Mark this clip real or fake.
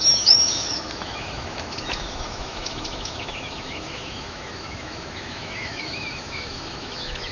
fake